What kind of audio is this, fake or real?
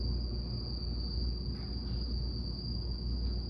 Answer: real